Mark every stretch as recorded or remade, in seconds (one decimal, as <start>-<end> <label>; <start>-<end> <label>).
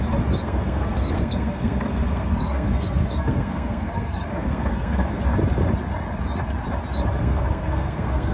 0.0-0.4 recorded; 0.4-5.1 remade; 5.1-7.2 recorded; 7.2-8.3 remade